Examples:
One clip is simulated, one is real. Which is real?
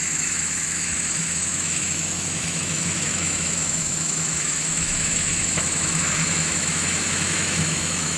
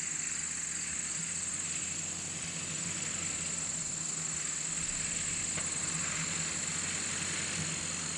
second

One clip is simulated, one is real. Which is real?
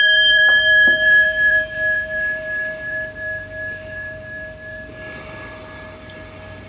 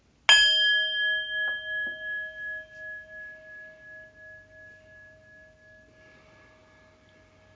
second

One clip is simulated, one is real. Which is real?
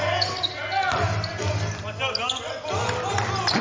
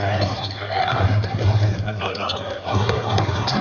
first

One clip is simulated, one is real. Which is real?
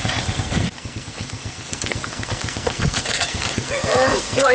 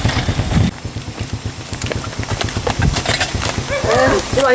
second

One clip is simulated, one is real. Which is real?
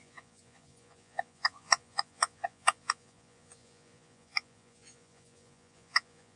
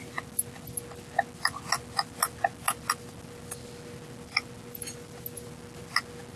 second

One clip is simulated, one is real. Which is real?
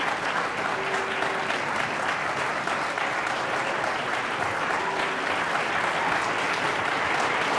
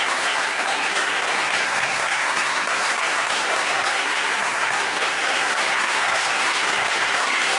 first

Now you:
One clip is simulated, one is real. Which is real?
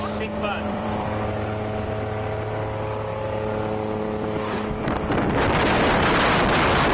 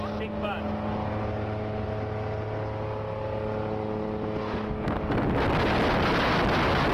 second